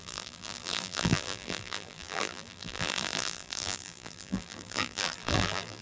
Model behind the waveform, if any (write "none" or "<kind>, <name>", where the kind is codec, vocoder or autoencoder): vocoder, BigVGAN v2